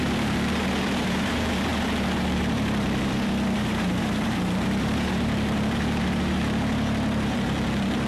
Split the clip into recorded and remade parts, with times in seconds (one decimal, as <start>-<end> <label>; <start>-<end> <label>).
0.0-8.1 remade